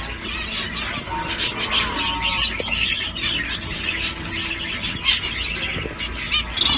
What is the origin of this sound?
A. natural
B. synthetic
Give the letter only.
A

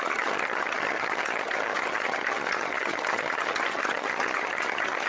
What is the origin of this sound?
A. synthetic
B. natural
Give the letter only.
A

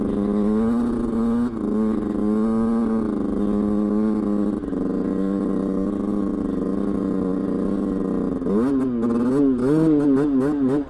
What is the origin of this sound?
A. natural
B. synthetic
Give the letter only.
A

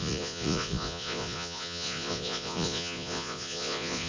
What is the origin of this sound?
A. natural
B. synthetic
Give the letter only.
B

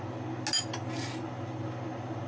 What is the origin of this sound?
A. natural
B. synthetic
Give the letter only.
A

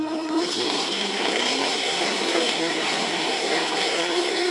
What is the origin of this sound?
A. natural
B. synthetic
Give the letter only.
B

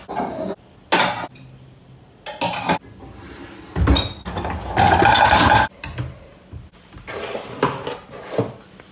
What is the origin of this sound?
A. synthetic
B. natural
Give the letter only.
B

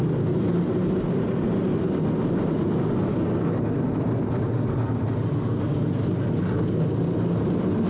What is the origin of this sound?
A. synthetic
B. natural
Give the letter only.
B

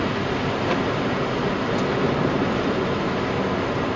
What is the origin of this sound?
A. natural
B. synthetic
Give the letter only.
A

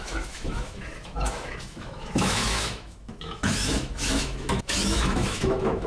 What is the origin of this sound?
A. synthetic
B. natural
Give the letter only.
A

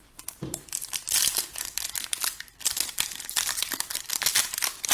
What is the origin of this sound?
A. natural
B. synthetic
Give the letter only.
B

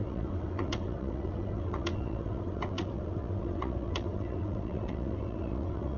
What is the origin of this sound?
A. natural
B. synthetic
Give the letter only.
B